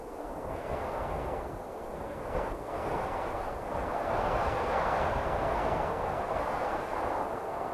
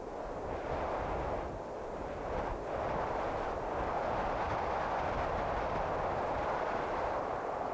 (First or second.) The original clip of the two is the second